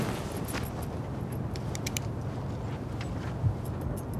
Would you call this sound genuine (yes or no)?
yes